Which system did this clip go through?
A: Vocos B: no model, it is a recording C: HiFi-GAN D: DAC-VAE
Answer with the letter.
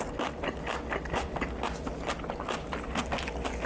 B